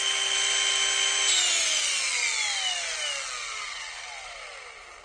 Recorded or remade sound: recorded